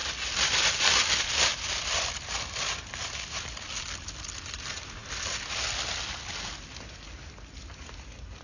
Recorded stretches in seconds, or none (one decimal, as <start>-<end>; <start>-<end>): 0.0-0.8; 5.0-8.4